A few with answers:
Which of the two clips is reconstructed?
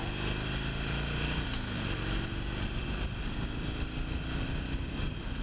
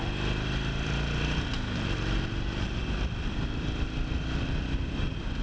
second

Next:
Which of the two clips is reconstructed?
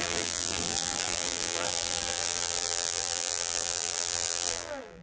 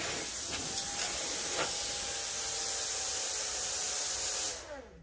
first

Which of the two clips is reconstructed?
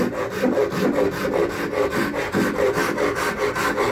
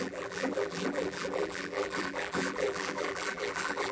second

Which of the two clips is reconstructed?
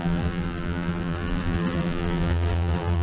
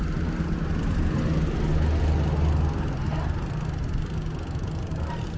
first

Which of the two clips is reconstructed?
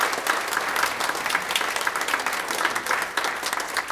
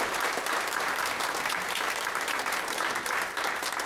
second